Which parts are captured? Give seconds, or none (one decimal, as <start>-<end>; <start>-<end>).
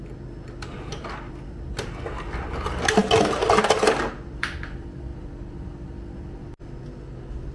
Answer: 0.0-0.9; 1.7-5.1; 5.9-7.5